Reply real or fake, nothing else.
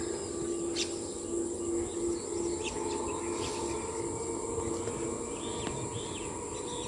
real